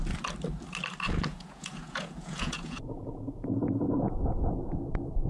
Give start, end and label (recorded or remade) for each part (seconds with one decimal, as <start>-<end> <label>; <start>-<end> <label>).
0.0-1.3 recorded; 1.3-4.5 remade; 4.5-5.3 recorded